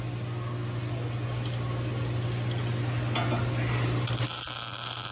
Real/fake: real